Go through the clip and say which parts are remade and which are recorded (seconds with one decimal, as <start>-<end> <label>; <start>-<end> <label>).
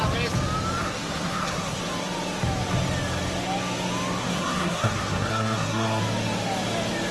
0.0-0.8 recorded; 0.8-1.8 remade; 1.8-4.2 recorded; 4.2-6.0 remade; 6.0-7.1 recorded